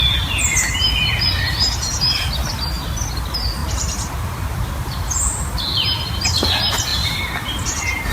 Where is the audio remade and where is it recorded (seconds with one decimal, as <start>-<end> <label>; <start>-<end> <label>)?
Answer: 0.0-3.6 recorded; 3.6-4.7 remade; 4.7-6.9 recorded; 6.9-8.1 remade